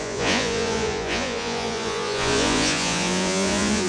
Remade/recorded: remade